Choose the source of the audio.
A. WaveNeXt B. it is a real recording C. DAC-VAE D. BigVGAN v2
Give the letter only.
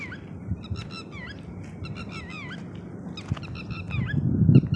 B